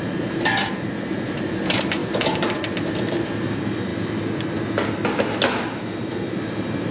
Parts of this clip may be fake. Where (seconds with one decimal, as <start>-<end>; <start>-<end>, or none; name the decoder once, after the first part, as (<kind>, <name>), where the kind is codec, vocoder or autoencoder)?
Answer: 0.0-3.9 (vocoder, BigVGAN v2); 5.4-6.9